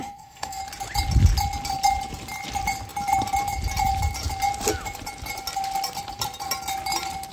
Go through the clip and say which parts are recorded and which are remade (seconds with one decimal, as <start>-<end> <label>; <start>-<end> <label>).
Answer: 0.0-0.6 remade; 0.6-7.3 recorded